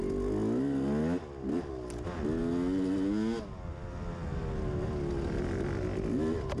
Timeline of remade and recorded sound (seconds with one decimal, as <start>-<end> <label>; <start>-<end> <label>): 0.0-6.6 recorded

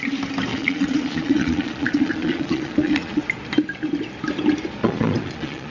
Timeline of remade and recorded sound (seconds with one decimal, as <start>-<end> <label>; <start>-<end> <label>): 0.0-0.5 recorded; 0.5-3.2 remade; 3.2-4.8 recorded; 4.8-5.7 remade

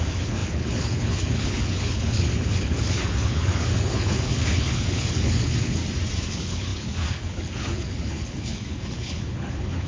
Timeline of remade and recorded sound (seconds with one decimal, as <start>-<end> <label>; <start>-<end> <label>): 0.0-5.8 remade; 5.8-6.3 recorded; 6.3-9.9 remade

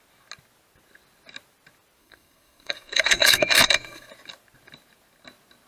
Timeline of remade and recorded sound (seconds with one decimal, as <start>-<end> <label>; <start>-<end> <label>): 0.0-2.0 recorded; 2.0-4.1 remade; 4.1-5.7 recorded